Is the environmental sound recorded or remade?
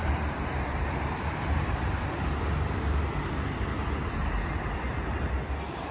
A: remade